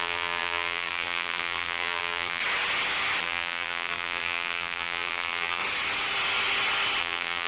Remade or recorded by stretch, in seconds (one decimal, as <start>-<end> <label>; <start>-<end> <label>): 0.0-2.4 remade; 2.4-3.2 recorded; 3.2-5.6 remade; 5.6-7.0 recorded; 7.0-7.5 remade